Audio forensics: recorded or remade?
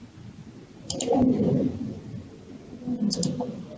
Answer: recorded